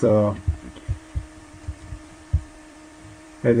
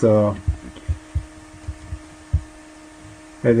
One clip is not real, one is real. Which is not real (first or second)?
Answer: first